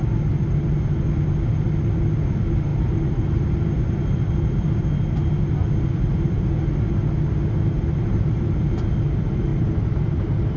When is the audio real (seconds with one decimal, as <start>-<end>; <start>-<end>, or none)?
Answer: 0.0-2.7; 4.9-5.6; 6.3-8.1; 8.9-10.6